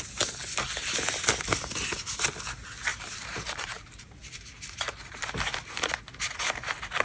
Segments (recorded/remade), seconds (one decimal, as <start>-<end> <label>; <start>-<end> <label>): 0.0-2.9 recorded; 2.9-5.3 remade; 5.3-7.0 recorded